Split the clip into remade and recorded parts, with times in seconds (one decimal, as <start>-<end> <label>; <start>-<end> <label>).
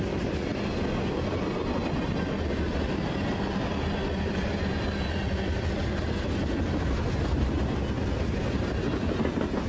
0.0-9.7 recorded